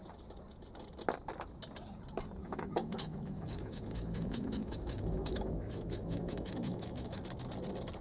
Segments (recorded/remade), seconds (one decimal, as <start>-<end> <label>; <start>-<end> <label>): 0.0-2.4 recorded; 2.4-7.2 remade; 7.2-8.0 recorded